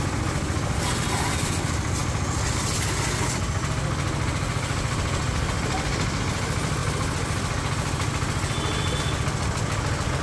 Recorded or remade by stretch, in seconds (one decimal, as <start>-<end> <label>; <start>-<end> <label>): 0.0-10.2 recorded